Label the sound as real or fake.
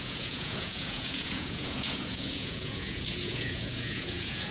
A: fake